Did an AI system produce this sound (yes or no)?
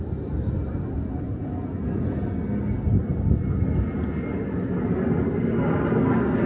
no